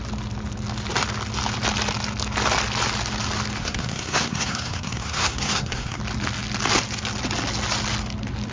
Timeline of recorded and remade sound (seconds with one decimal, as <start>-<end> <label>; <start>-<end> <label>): 0.0-3.6 recorded; 3.6-6.0 remade; 6.0-8.5 recorded